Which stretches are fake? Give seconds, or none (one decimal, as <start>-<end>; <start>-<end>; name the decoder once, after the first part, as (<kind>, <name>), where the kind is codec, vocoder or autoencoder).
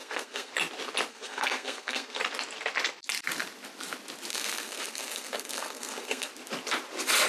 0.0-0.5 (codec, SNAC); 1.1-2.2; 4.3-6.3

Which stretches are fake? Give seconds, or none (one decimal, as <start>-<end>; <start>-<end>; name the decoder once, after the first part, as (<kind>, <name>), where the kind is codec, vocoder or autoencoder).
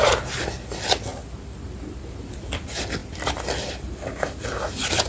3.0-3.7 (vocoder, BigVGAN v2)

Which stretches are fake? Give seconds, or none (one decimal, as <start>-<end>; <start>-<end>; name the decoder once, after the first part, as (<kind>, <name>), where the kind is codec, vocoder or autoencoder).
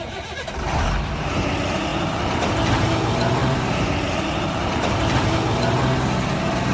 3.4-5.3 (vocoder, BigVGAN v2)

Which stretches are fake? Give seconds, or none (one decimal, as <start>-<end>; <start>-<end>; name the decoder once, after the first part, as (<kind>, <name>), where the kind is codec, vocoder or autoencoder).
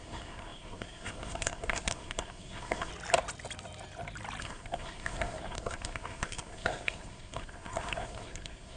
0.0-2.9 (codec, SNAC); 4.4-8.8